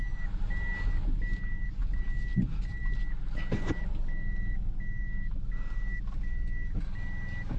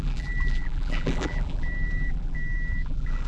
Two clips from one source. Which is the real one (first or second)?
first